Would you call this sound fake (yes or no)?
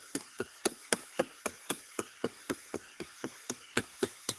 yes